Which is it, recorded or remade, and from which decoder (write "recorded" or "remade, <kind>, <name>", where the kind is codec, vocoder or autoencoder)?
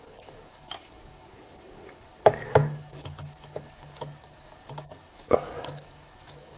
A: remade, codec, DAC